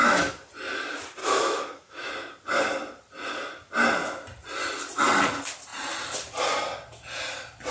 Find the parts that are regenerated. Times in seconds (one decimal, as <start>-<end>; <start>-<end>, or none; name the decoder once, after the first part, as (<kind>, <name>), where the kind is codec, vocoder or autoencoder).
0.0-0.5 (autoencoder, DAC-VAE); 1.2-2.1